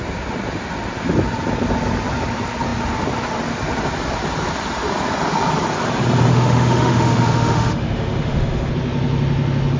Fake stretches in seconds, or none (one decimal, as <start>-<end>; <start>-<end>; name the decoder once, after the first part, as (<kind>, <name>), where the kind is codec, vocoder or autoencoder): 6.3-8.7 (autoencoder, DAC-VAE)